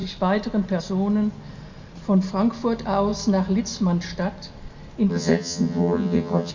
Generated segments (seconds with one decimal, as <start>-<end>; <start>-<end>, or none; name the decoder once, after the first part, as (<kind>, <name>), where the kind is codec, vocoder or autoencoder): 5.1-6.5 (vocoder, HiFi-GAN)

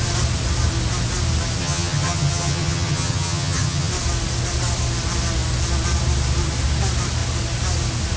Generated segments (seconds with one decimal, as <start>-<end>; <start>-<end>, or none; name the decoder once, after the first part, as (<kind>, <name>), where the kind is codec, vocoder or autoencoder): 1.6-3.9 (vocoder, HiFi-GAN)